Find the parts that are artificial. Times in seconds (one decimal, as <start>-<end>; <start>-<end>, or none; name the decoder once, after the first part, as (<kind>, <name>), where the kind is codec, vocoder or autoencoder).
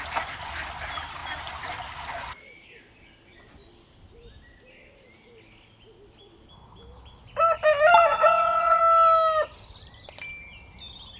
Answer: 8.1-8.8 (vocoder, WaveNeXt)